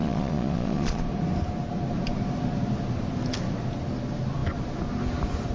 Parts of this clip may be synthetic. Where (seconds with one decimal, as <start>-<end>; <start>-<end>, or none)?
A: 0.0-1.0